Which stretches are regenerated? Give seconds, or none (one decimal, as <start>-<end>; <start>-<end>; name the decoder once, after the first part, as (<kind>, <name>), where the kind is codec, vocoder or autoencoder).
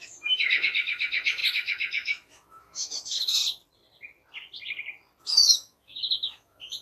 0.0-3.4 (autoencoder, DAC-VAE); 5.2-6.8